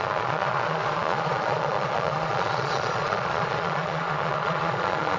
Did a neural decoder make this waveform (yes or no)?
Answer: yes